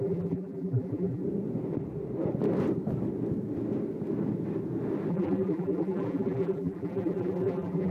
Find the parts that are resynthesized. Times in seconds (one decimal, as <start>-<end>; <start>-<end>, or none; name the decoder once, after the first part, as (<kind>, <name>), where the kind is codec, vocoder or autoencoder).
0.0-1.2 (vocoder, BigVGAN v2); 5.1-7.9